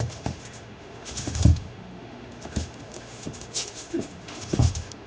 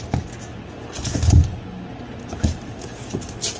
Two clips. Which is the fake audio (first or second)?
first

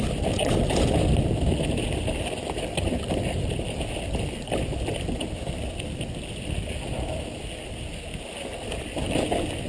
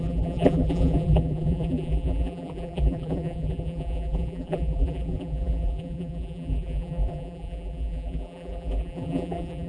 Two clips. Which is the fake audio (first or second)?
second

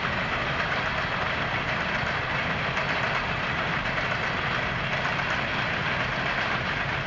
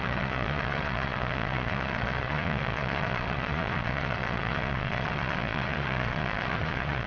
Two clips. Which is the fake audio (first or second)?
second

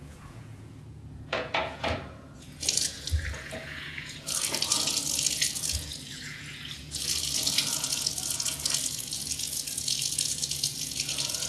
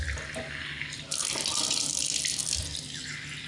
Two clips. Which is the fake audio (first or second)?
first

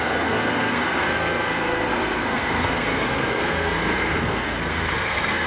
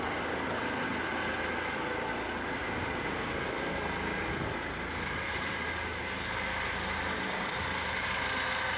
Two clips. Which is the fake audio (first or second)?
first